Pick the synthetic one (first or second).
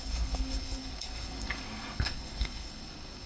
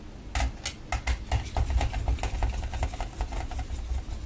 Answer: first